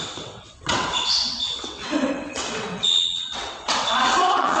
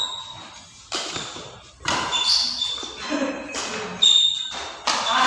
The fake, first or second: first